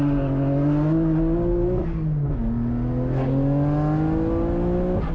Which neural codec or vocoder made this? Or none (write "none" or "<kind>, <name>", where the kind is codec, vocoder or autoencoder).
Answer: none